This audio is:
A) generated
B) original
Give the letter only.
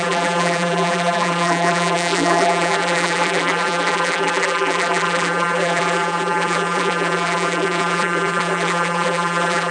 A